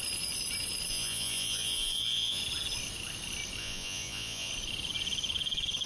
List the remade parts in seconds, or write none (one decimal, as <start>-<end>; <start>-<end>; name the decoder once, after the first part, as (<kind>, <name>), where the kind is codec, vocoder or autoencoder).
0.9-2.4 (vocoder, Vocos); 3.6-4.5